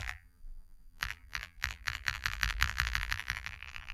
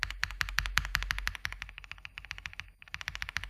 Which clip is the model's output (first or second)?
first